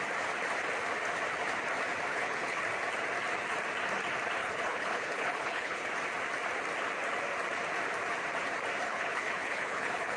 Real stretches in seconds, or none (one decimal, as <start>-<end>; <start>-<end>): 0.0-2.1; 2.6-4.4; 5.9-8.9